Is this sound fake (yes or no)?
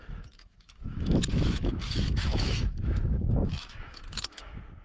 yes